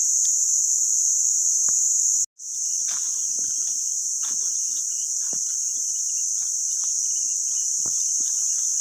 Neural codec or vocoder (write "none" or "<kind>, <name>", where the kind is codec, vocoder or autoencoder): none